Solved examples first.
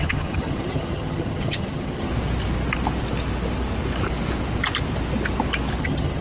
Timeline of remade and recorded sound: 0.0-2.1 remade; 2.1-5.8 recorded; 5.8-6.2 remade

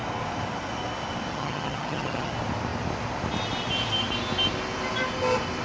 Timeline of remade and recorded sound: 0.0-1.3 recorded; 1.3-2.3 remade; 2.3-5.6 recorded

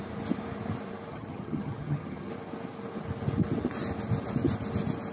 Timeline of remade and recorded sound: 0.0-1.1 recorded; 1.1-2.3 remade; 2.3-5.1 recorded

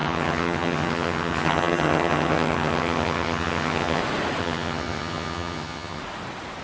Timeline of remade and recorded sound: 0.0-4.0 remade; 4.0-4.4 recorded; 4.4-6.0 remade; 6.0-6.6 recorded

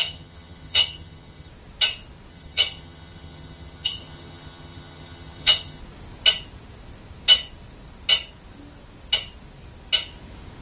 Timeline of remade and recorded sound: 0.0-1.5 remade; 1.5-2.3 recorded; 2.3-5.8 remade; 5.8-10.6 recorded